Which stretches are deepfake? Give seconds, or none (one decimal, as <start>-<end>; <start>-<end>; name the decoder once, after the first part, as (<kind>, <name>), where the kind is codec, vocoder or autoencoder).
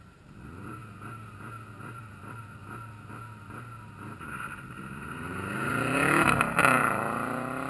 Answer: 0.0-0.8 (vocoder, BigVGAN v2); 1.7-2.6; 4.7-5.7; 6.8-7.7